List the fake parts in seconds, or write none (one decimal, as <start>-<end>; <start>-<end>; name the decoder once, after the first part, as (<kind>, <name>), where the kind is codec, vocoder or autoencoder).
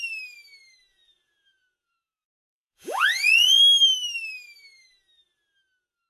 0.9-3.6 (vocoder, Vocos)